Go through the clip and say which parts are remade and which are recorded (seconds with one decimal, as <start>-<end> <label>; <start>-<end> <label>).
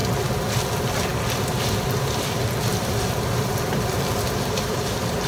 0.0-0.7 remade; 0.7-2.7 recorded; 2.7-5.3 remade